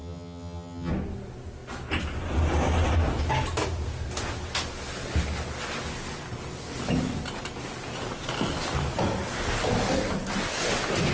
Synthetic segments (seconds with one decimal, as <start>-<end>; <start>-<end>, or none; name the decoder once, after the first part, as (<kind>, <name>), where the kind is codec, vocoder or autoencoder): 0.0-0.9 (vocoder, HiFi-GAN)